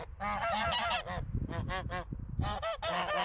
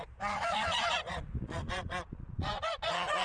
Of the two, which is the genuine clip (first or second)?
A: first